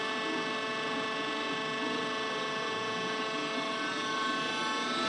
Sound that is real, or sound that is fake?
real